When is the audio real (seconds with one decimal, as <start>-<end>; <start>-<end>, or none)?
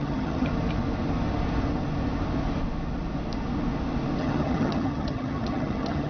0.5-4.2